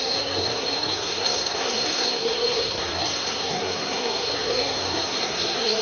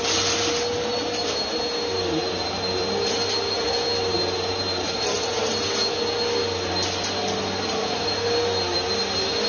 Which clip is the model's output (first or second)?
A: first